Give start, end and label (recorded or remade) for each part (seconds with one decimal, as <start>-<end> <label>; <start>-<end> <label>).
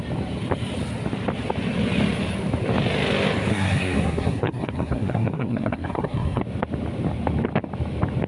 0.0-3.5 recorded; 3.5-6.4 remade; 6.4-8.3 recorded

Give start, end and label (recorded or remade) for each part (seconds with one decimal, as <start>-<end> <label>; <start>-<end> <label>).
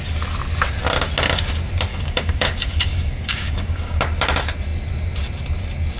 0.0-1.9 recorded; 1.9-4.0 remade; 4.0-6.0 recorded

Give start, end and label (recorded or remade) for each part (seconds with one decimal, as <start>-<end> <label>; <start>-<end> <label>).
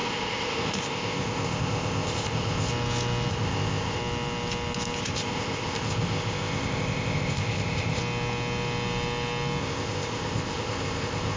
0.0-2.7 remade; 2.7-3.3 recorded; 3.3-4.0 remade; 4.0-5.0 recorded; 5.0-8.0 remade; 8.0-9.6 recorded; 9.6-11.4 remade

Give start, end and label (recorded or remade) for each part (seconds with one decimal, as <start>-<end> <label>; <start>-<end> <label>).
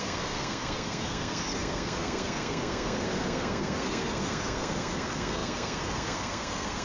0.0-6.8 remade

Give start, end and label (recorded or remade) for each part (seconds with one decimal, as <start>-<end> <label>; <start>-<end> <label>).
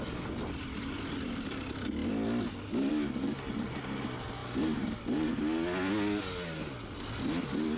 0.0-7.8 recorded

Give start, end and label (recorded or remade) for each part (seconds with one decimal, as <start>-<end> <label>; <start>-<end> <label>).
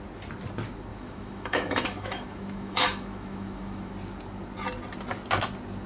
0.0-0.9 recorded; 0.9-3.9 remade; 3.9-5.9 recorded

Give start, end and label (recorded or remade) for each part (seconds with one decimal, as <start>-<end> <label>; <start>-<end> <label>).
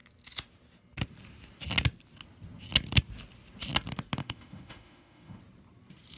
0.0-4.2 recorded; 4.2-5.4 remade; 5.4-6.2 recorded